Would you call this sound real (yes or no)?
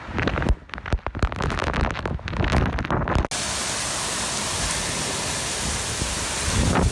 yes